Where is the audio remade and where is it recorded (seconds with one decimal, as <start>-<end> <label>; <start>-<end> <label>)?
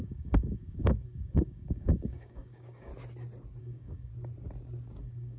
0.0-2.9 remade; 2.9-3.6 recorded; 3.6-4.1 remade; 4.1-5.0 recorded; 5.0-5.4 remade